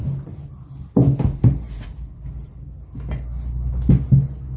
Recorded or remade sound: recorded